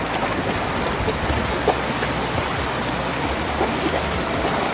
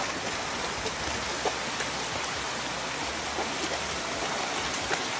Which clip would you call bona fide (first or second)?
second